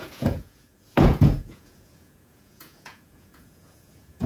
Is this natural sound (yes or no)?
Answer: no